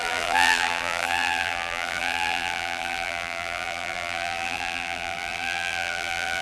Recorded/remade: remade